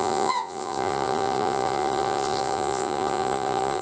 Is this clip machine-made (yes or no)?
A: yes